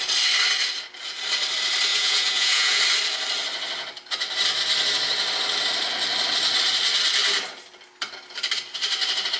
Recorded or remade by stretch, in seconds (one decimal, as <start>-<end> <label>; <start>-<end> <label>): 0.0-1.9 recorded; 1.9-2.8 remade; 2.8-9.4 recorded